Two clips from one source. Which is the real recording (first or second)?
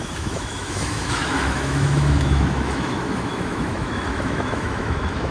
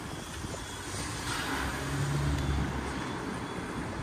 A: second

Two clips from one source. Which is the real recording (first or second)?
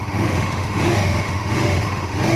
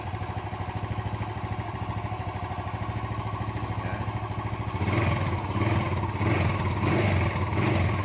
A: second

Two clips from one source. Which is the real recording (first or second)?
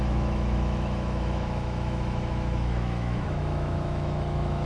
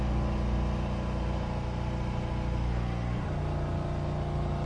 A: second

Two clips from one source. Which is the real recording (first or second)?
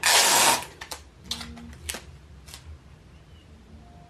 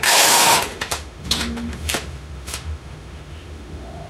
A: first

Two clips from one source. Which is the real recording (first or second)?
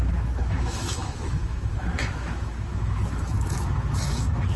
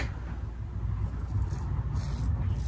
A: second